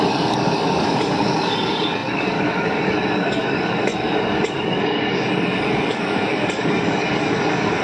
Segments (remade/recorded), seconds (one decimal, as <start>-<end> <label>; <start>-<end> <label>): 0.0-7.8 remade